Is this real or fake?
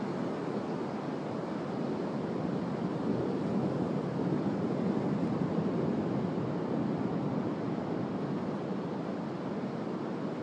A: fake